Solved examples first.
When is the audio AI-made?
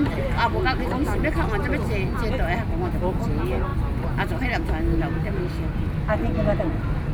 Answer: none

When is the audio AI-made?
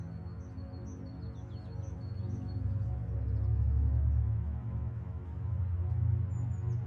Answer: 3.5-5.6 (autoencoder, DAC-VAE)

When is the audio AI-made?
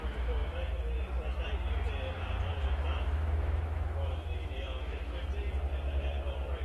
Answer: 2.5-5.0 (autoencoder, DAC-VAE)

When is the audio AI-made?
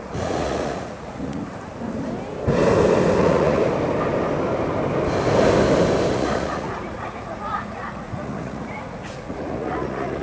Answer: 0.0-1.4 (vocoder, Vocos); 3.2-3.6; 6.1-10.2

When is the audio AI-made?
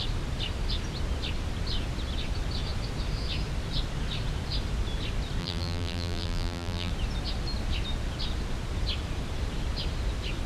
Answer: 5.4-6.9 (vocoder, BigVGAN v2)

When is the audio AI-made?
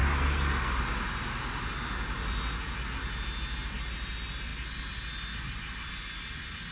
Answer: 0.0-0.8 (codec, SNAC)